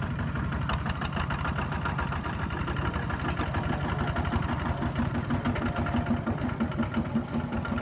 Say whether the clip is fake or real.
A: real